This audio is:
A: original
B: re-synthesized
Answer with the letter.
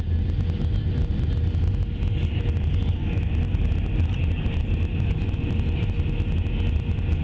A